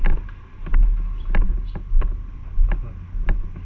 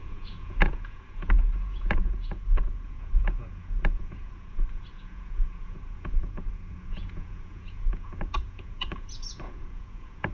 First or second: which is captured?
first